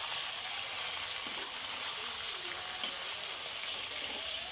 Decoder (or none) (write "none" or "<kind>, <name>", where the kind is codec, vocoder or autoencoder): none